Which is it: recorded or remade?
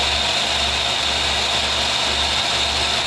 recorded